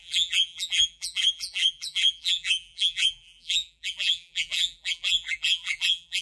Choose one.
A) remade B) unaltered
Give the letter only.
A